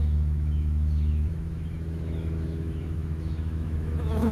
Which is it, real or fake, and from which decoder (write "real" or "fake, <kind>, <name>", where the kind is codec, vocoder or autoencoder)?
fake, autoencoder, DAC-VAE